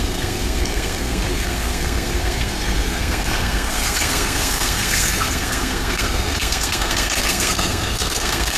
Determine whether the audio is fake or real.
fake